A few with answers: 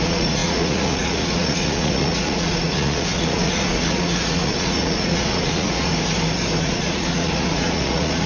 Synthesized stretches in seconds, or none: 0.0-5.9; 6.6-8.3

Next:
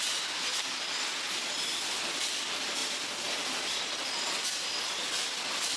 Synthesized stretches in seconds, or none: none

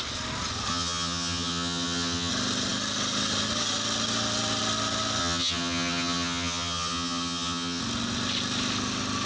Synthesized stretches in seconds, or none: 0.7-2.3; 5.2-7.8

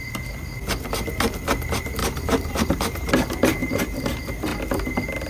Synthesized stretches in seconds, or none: 2.0-3.1; 3.6-4.1

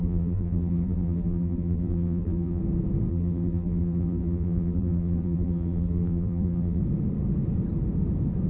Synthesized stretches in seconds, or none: 0.0-2.6; 3.1-6.8

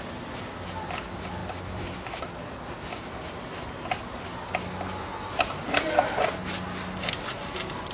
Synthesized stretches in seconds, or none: none

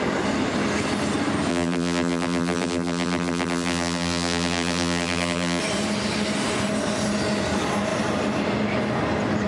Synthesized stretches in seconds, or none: 1.5-5.6